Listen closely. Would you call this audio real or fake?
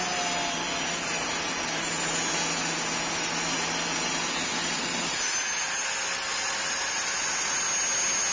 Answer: real